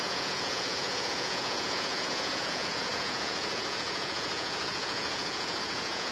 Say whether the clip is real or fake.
fake